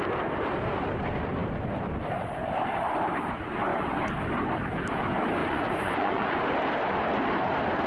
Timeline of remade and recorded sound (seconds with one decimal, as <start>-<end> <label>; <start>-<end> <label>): 0.0-5.4 recorded; 5.4-6.4 remade; 6.4-7.9 recorded